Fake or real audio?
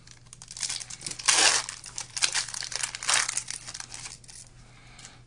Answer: real